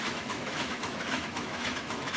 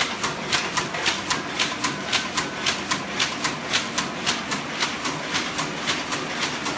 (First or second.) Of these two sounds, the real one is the second